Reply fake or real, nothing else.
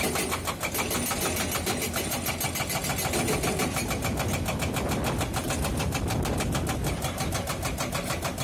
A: real